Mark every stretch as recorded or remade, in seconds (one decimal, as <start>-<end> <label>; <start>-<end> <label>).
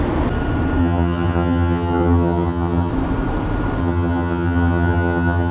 0.0-0.8 recorded; 0.8-2.9 remade; 2.9-3.8 recorded; 3.8-5.5 remade